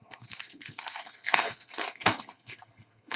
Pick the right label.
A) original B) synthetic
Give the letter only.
B